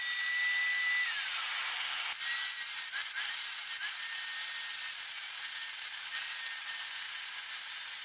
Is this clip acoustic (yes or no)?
yes